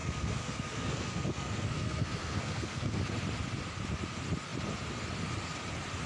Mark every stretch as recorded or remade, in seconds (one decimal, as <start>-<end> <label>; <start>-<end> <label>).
0.0-3.0 remade; 3.0-6.1 recorded